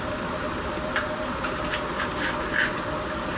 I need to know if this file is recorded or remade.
recorded